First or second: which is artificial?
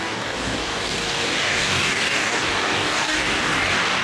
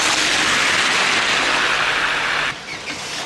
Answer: first